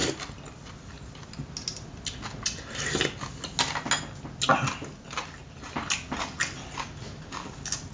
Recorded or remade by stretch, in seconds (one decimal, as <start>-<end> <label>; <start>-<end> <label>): 0.0-7.9 recorded